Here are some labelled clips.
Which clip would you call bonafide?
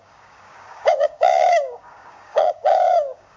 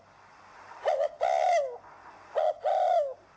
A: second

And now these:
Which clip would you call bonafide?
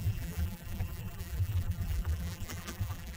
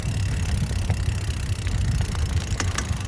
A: second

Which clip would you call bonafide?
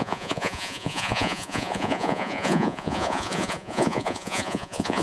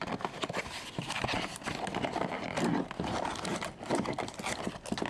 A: second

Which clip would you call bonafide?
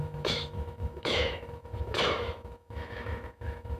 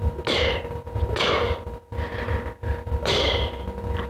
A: second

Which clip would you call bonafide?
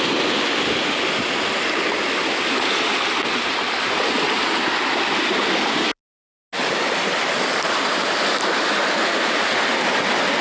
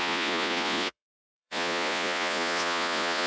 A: first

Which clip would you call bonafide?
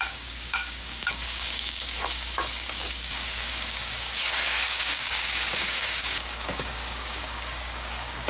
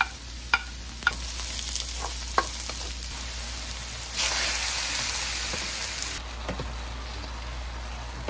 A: second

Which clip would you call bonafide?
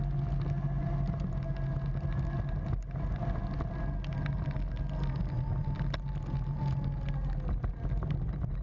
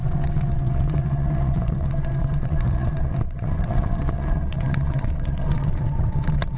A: first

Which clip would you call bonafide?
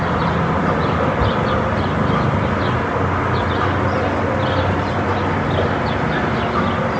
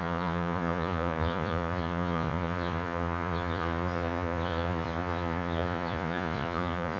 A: first